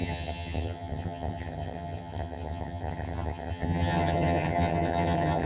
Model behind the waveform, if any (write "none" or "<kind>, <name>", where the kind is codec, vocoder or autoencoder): vocoder, HiFi-GAN